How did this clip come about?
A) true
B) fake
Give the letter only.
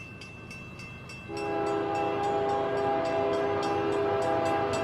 A